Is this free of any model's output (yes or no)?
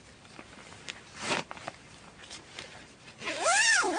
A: no